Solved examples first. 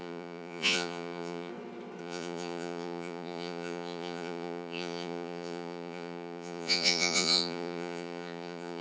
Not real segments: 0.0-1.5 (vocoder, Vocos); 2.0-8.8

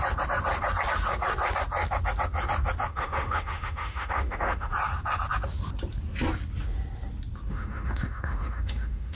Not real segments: 2.9-4.7 (autoencoder, DAC-VAE); 7.5-9.2

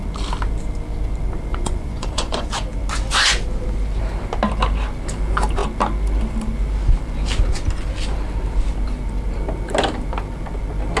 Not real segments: 1.5-2.5 (vocoder, Vocos)

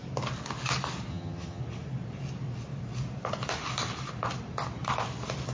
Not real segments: 1.1-1.6 (vocoder, HiFi-GAN)

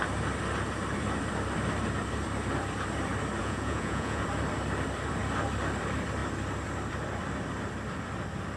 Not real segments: 3.4-4.2 (vocoder, Vocos)

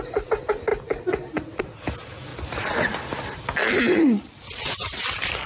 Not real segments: 0.7-1.6 (vocoder, BigVGAN v2); 2.3-4.5

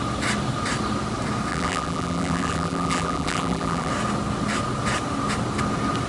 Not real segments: 1.5-3.9 (vocoder, BigVGAN v2)

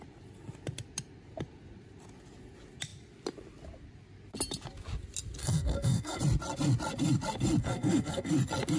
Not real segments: 5.4-6.2 (codec, SNAC); 7.6-8.3